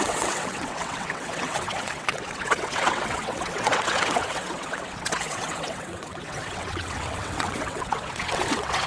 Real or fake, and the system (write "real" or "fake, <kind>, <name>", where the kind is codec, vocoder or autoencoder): fake, vocoder, WaveNeXt